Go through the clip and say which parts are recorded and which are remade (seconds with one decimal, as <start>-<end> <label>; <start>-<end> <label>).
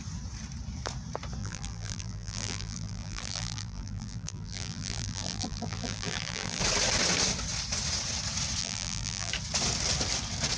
0.0-1.4 recorded; 1.4-6.6 remade; 6.6-8.6 recorded; 8.6-9.3 remade; 9.3-10.6 recorded